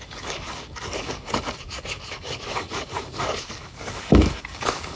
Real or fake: fake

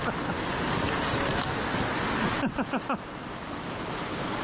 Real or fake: real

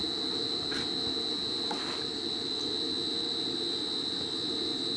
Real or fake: real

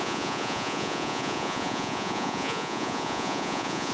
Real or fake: fake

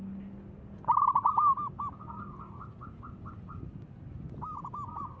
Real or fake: real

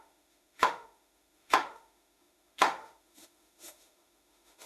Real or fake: fake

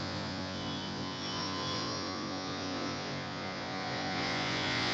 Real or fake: fake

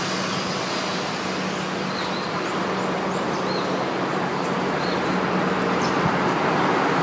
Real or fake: real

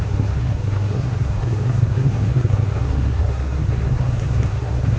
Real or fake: fake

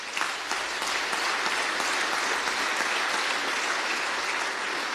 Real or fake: real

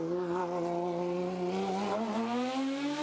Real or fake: real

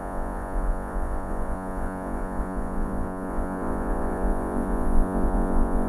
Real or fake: fake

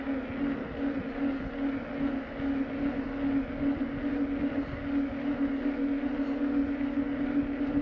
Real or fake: real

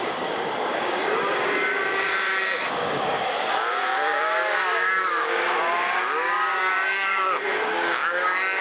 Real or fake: fake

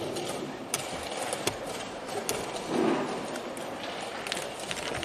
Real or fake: real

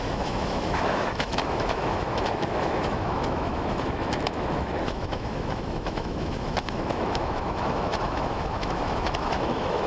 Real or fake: fake